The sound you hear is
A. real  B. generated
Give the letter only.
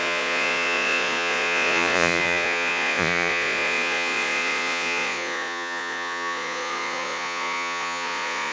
B